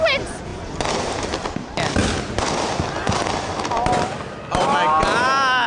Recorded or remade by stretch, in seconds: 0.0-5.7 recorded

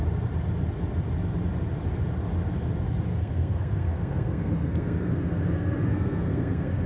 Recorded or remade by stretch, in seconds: 0.0-3.1 recorded; 3.1-6.9 remade